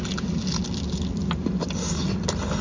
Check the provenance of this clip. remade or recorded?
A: recorded